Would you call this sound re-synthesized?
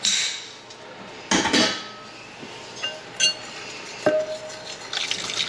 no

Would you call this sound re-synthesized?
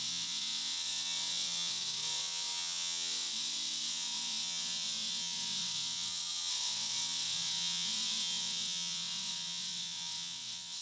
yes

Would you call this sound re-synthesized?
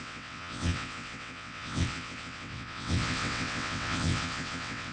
yes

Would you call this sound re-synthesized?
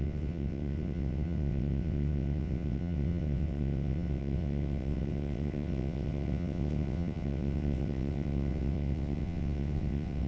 yes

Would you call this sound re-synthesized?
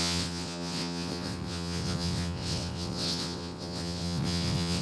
yes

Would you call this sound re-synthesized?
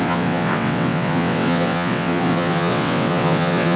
yes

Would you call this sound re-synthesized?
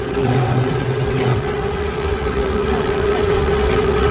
yes